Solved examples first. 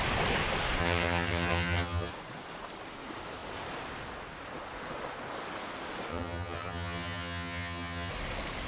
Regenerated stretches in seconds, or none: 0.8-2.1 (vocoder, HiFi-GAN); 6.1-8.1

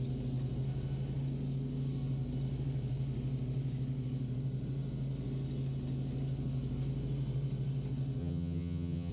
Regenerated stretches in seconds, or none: 8.2-9.1 (vocoder, HiFi-GAN)

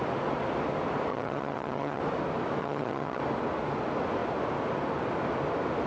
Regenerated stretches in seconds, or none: 1.1-2.0 (vocoder, HiFi-GAN); 2.6-3.2

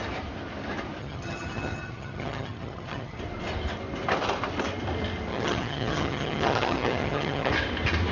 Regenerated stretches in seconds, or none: 1.0-3.2 (vocoder, HiFi-GAN); 5.3-7.5

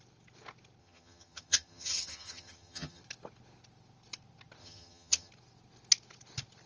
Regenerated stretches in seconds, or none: 0.8-3.0 (vocoder, HiFi-GAN); 4.6-5.3

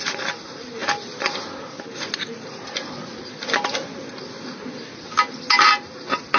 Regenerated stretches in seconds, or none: none

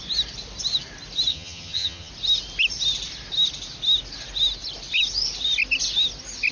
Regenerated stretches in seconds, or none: 1.3-2.1 (vocoder, HiFi-GAN)

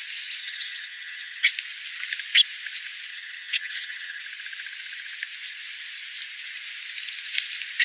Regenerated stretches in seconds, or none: 0.4-1.5 (vocoder, HiFi-GAN); 3.1-4.2